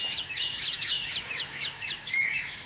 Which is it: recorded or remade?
remade